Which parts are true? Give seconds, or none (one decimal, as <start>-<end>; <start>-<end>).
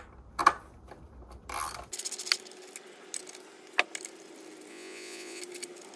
0.0-4.7; 5.4-6.0